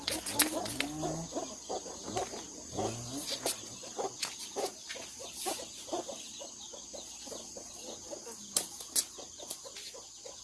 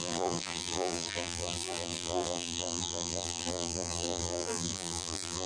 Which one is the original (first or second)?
first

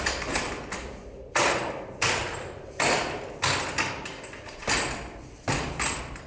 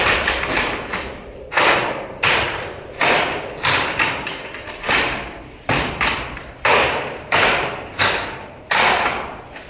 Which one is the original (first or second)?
first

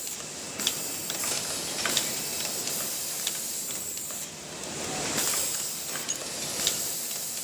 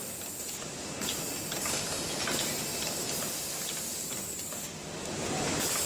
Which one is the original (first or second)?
second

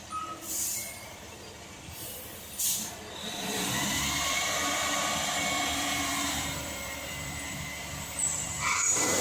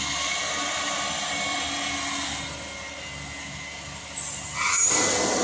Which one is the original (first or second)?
second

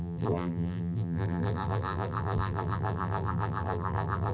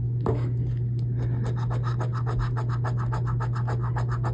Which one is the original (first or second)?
second